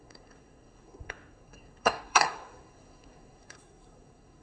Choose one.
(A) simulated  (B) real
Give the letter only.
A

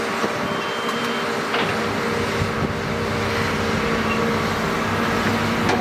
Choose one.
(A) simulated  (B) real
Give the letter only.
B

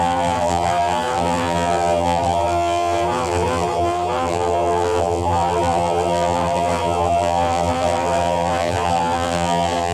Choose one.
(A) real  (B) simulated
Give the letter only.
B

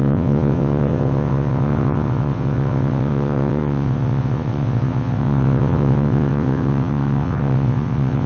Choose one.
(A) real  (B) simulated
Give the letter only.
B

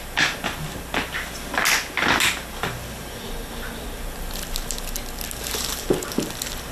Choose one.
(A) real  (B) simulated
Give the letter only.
A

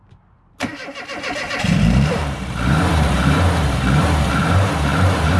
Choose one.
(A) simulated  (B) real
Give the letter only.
A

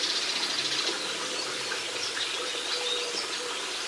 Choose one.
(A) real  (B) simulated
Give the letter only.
A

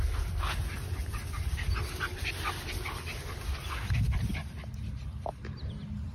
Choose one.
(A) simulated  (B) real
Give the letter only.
B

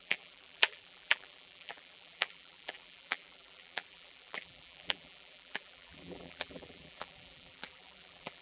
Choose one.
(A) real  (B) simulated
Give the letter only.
B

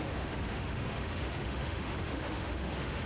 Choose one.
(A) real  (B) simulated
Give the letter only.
B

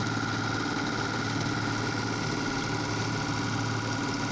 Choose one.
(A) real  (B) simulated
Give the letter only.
A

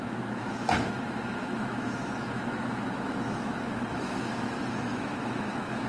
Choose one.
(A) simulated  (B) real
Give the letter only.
A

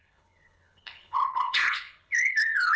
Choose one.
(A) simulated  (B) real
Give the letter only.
A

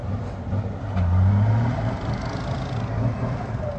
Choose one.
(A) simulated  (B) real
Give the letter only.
B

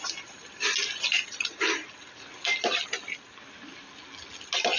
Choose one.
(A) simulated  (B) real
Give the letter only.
B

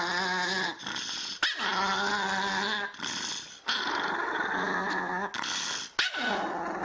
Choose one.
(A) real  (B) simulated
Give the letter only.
A